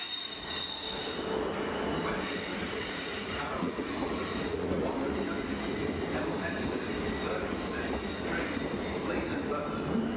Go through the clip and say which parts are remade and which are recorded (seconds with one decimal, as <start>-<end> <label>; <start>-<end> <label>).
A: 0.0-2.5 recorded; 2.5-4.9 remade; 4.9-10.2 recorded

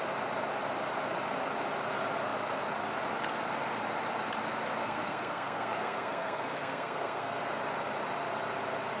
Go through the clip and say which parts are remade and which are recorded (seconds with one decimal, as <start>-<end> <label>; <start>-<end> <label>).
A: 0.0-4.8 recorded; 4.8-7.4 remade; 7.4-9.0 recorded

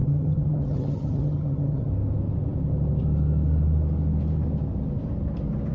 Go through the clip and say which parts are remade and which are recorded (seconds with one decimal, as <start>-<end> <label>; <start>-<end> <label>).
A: 0.0-1.9 remade; 1.9-5.7 recorded

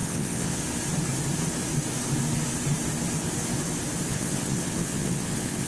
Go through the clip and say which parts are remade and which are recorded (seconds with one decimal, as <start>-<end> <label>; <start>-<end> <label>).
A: 0.0-0.6 remade; 0.6-4.1 recorded; 4.1-5.7 remade